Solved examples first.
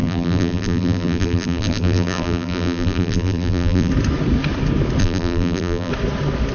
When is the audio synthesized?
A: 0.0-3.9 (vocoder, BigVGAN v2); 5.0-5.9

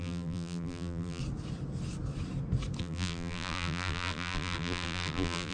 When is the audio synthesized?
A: 0.0-1.2 (vocoder, BigVGAN v2); 2.8-5.5

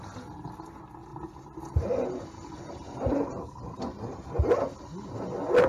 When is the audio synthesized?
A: 1.1-4.5 (vocoder, BigVGAN v2)